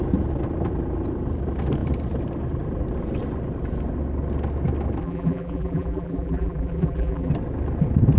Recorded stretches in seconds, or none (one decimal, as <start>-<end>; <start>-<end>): 0.0-5.0; 7.3-8.2